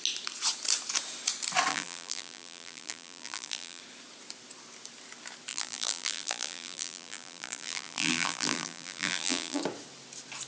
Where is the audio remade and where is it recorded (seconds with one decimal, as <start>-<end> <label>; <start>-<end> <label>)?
0.0-1.7 recorded; 1.7-3.8 remade; 3.8-5.5 recorded; 5.5-9.6 remade; 9.6-10.5 recorded